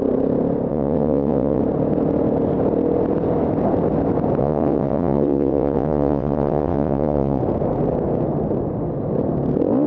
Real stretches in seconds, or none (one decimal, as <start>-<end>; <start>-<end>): 0.0-0.7; 1.6-4.4; 7.4-9.9